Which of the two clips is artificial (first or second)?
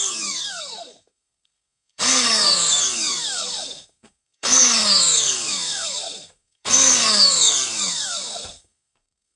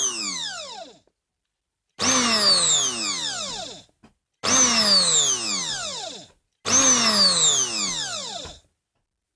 first